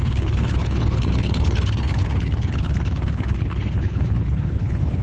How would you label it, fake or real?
fake